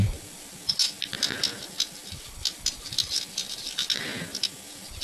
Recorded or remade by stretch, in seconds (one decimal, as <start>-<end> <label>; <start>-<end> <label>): 0.0-5.0 recorded